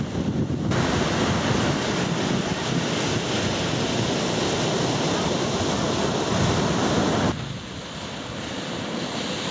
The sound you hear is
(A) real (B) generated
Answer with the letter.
A